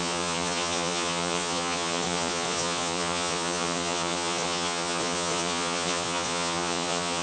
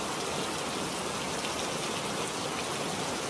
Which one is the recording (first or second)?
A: second